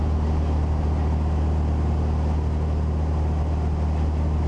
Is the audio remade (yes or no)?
no